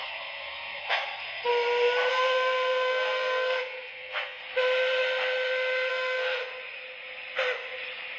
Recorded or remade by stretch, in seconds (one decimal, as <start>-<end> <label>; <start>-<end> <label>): 0.0-1.5 remade; 1.5-2.1 recorded; 2.1-4.4 remade; 4.4-5.9 recorded; 5.9-6.4 remade; 6.4-8.2 recorded